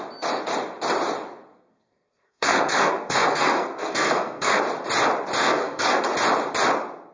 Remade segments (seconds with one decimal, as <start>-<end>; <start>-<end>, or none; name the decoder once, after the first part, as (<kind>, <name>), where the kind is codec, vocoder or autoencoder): 1.5-4.6 (codec, SNAC); 5.4-6.0